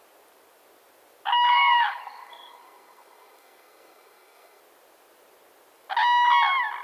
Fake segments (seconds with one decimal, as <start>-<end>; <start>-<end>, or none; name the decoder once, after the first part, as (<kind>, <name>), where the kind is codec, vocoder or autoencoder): 1.5-4.6 (codec, SNAC)